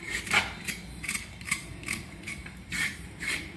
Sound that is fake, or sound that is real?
fake